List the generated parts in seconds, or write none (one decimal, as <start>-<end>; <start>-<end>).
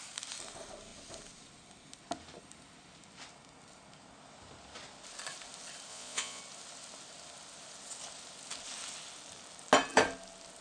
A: 5.9-6.4